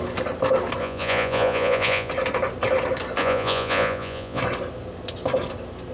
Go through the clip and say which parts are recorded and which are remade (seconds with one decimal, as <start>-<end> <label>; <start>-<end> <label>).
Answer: 0.0-0.8 recorded; 0.8-2.1 remade; 2.1-3.2 recorded; 3.2-4.4 remade; 4.4-5.9 recorded